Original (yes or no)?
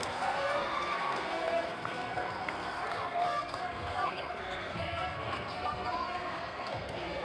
no